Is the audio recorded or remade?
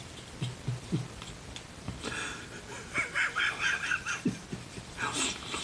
recorded